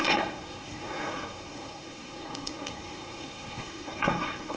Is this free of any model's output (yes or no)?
no